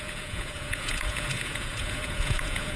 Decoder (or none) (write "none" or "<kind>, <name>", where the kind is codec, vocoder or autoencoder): vocoder, Vocos